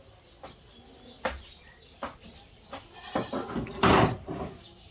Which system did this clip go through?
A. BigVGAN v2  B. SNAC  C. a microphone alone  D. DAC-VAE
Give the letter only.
A